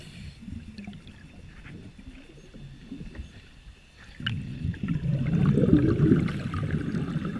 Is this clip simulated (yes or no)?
no